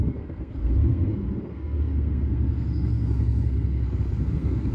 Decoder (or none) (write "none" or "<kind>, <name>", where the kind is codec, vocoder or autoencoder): codec, SNAC